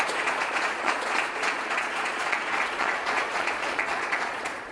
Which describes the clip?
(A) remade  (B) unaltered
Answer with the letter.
A